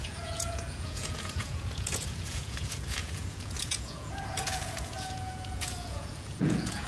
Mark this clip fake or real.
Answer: fake